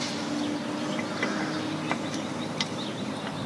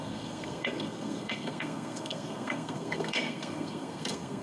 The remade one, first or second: second